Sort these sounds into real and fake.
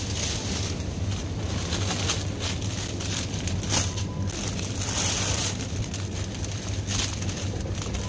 real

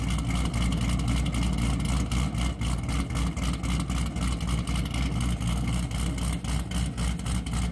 real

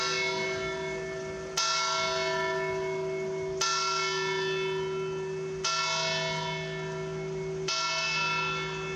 real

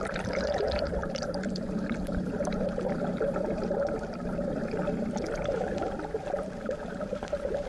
fake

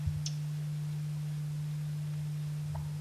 real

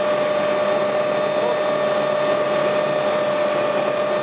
real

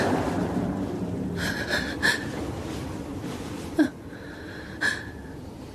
fake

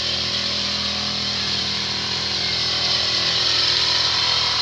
fake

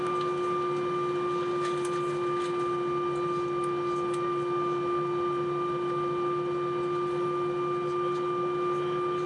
real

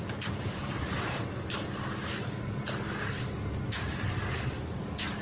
real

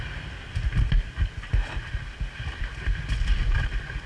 real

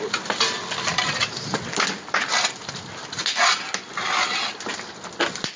real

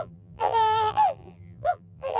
fake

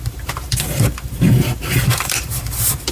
fake